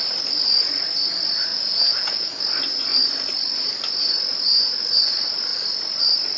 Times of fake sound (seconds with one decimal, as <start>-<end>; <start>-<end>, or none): 1.5-2.4